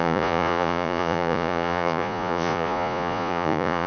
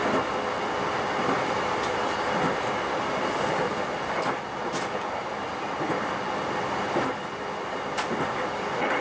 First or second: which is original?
second